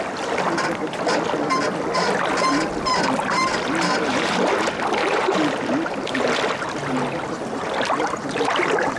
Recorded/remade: recorded